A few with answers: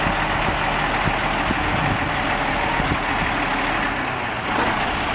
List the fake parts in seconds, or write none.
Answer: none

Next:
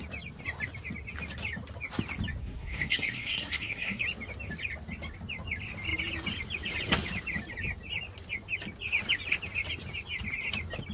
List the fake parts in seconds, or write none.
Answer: 2.4-4.0 (codec, SNAC)

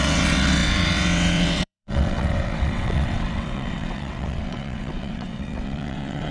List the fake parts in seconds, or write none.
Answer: 0.0-6.3 (vocoder, WaveNeXt)

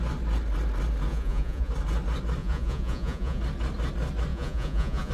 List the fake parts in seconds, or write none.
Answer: 1.1-1.7 (vocoder, Vocos); 2.4-3.4; 4.3-5.1

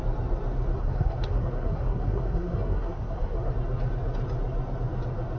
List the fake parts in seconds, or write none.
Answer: 0.8-3.5 (codec, SNAC)

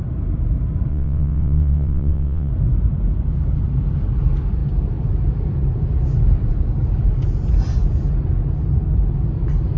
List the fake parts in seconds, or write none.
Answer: 0.9-2.5 (vocoder, WaveNeXt)

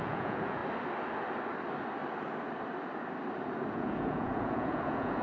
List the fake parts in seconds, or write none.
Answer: 0.0-0.6 (vocoder, Vocos); 3.7-5.2

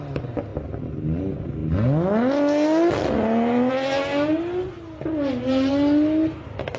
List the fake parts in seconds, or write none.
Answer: none